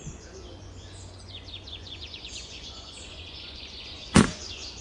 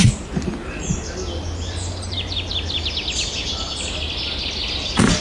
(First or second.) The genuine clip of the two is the second